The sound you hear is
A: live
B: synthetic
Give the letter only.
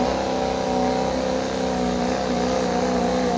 A